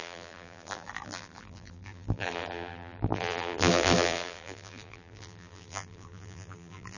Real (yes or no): no